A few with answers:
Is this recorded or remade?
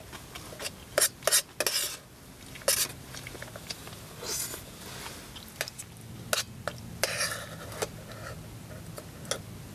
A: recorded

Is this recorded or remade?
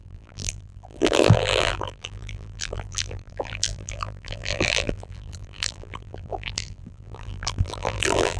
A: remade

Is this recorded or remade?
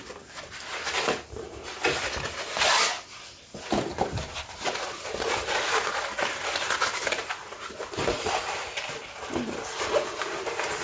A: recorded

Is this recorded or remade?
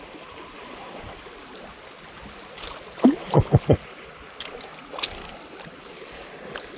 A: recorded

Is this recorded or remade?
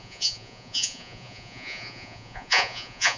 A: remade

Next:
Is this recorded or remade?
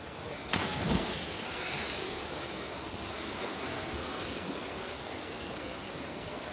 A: remade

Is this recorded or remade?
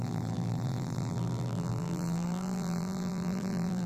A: remade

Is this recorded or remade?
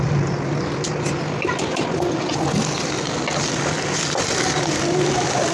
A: recorded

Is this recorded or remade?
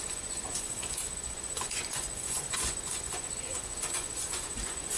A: remade